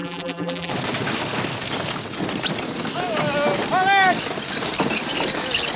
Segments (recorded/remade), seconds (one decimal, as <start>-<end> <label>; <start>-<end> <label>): 0.0-0.7 remade; 0.7-5.8 recorded